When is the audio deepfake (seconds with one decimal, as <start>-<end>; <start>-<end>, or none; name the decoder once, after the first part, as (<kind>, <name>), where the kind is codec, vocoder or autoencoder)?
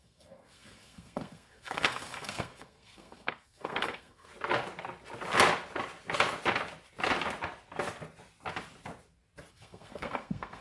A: 0.0-4.3 (codec, SNAC); 9.5-10.6